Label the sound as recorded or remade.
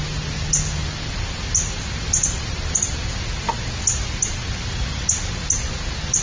recorded